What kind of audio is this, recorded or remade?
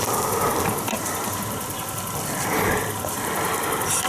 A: recorded